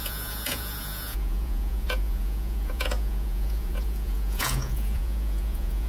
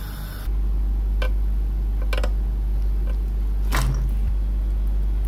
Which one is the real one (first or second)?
second